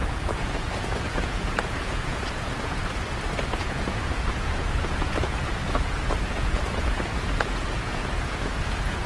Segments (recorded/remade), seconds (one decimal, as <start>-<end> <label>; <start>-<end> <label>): 0.0-2.8 remade; 2.8-3.5 recorded; 3.5-9.1 remade